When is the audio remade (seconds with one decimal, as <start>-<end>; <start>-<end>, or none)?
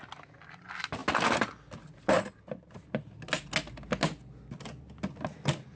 none